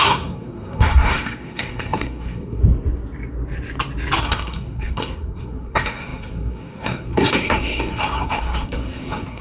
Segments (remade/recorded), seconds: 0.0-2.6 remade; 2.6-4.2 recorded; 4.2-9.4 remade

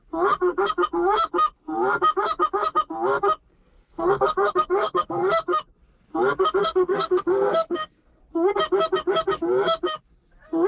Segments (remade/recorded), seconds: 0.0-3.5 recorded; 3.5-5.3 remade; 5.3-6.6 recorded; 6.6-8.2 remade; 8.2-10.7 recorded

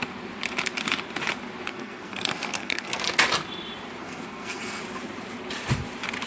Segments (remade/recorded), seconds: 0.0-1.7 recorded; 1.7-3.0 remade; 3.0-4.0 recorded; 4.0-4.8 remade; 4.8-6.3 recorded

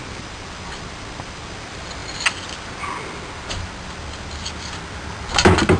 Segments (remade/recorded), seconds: 0.0-5.8 recorded

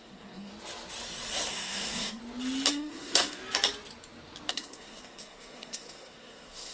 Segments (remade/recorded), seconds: 0.0-0.5 remade; 0.5-1.5 recorded; 1.5-2.2 remade; 2.2-2.7 recorded; 2.7-3.4 remade; 3.4-4.5 recorded; 4.5-6.7 remade